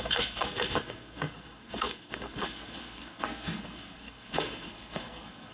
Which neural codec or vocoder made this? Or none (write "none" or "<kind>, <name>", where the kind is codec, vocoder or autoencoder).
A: codec, SNAC